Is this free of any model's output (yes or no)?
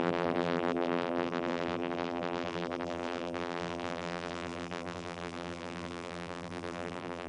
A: no